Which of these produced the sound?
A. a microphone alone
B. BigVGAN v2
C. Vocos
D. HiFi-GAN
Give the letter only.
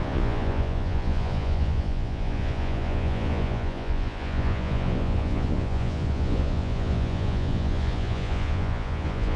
C